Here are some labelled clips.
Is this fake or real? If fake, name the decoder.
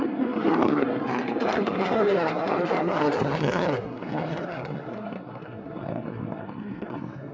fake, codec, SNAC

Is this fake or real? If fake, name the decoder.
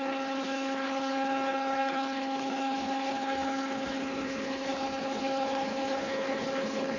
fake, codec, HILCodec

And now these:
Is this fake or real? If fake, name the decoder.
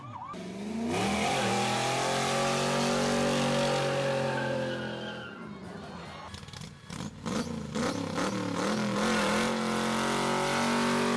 real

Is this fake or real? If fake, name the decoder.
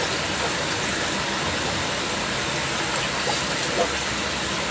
fake, vocoder, BigVGAN v2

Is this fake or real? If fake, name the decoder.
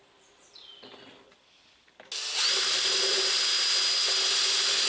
real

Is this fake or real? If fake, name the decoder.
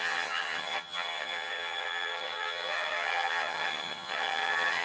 fake, vocoder, HiFi-GAN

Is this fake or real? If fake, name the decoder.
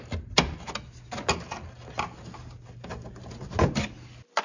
real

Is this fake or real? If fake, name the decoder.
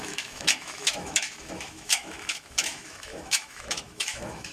fake, autoencoder, DAC-VAE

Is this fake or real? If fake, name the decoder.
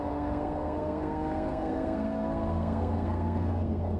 fake, codec, SNAC